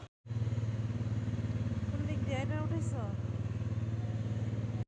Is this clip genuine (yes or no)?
yes